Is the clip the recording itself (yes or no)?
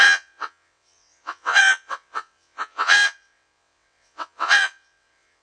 no